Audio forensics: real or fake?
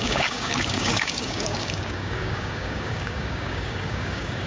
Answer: fake